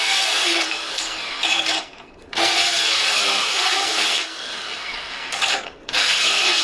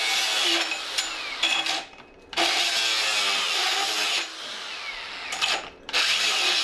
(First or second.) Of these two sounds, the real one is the second